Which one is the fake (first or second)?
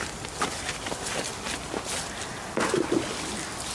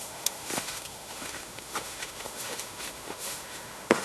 second